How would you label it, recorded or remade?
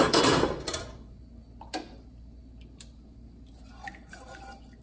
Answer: recorded